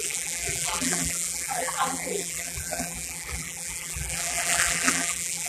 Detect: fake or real fake